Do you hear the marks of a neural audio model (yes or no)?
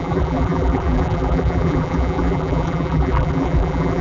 yes